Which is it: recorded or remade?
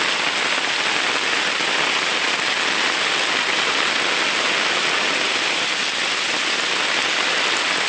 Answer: recorded